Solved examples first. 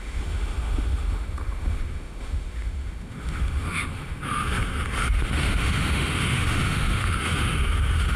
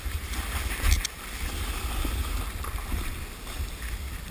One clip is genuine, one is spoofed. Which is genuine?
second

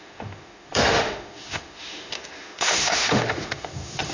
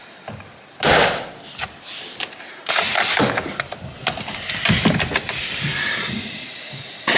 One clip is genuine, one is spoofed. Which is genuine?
second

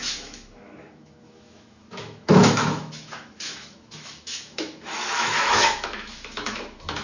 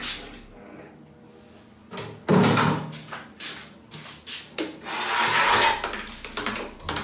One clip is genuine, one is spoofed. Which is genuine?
second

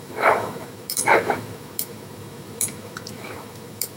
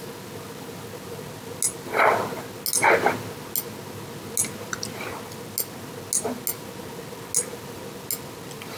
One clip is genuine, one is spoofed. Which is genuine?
second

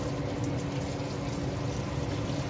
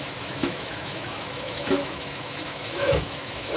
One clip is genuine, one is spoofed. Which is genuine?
first